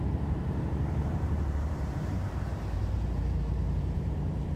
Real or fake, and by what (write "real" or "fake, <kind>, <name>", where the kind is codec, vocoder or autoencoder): fake, vocoder, BigVGAN v2